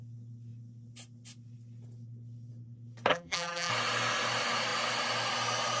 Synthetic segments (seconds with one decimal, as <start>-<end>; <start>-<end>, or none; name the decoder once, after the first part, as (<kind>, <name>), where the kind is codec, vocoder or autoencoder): 3.1-3.7 (vocoder, BigVGAN v2)